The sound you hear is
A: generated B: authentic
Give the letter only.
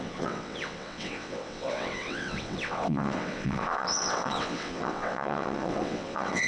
A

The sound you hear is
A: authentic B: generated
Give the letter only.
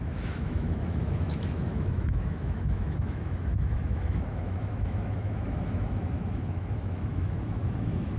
B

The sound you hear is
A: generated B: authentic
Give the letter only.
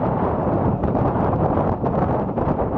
A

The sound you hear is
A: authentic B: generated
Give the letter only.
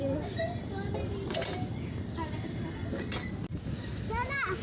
A